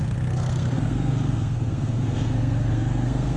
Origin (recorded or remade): remade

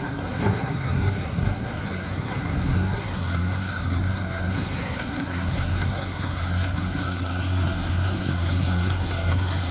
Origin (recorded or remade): remade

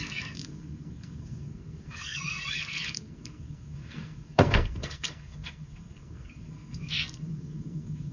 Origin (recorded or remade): remade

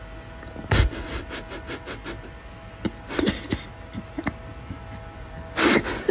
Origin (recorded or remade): recorded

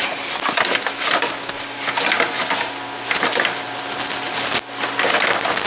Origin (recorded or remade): recorded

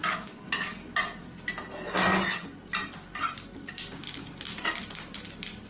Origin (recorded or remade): recorded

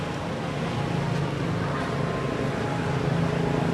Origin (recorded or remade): recorded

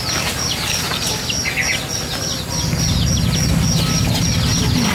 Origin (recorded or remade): recorded